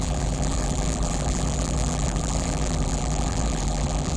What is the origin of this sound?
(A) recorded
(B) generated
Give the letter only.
B